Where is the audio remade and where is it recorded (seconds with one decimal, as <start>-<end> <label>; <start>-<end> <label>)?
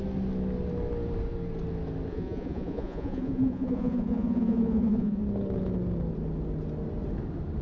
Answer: 0.0-2.1 recorded; 2.1-5.2 remade; 5.2-7.6 recorded